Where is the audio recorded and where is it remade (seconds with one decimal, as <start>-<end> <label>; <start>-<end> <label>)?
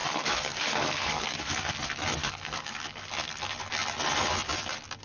0.0-1.7 remade; 1.7-2.2 recorded; 2.2-3.1 remade; 3.1-5.0 recorded